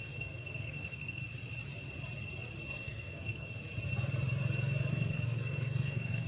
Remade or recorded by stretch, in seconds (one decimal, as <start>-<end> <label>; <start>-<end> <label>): 0.0-1.2 remade; 1.2-2.7 recorded; 2.7-3.6 remade; 3.6-4.9 recorded; 4.9-6.3 remade